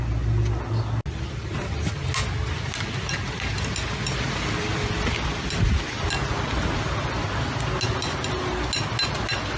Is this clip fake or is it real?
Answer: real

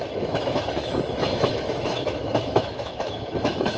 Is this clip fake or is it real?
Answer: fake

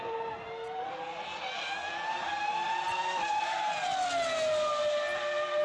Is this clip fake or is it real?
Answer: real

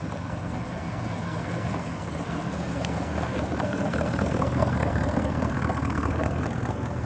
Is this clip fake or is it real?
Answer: fake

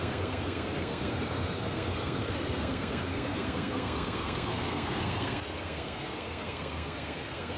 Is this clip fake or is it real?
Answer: fake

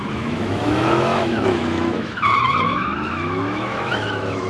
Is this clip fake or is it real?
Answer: fake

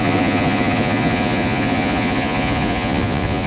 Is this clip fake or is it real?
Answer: fake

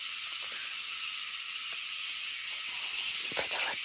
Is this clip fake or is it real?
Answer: real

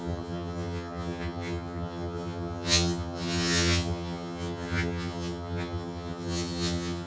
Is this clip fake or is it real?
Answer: fake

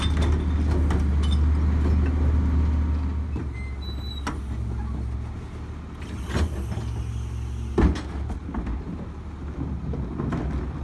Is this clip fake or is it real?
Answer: real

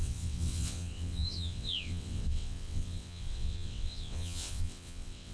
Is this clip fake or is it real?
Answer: fake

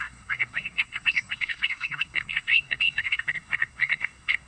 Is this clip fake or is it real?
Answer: fake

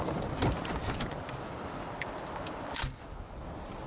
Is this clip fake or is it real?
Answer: real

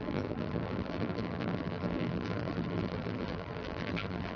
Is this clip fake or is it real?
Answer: fake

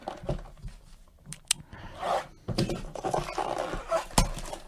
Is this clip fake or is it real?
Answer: real